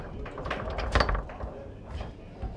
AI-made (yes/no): no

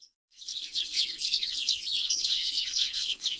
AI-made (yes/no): yes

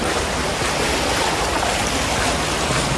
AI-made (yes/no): no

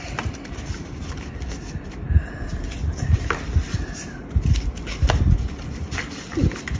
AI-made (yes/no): no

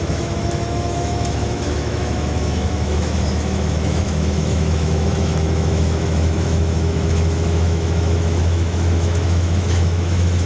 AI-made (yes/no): yes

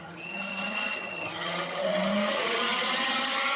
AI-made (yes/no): yes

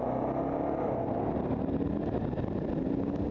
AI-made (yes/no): no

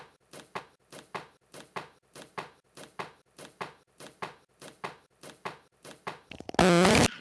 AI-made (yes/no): no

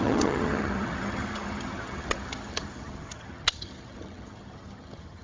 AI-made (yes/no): yes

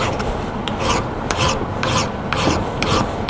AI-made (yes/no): yes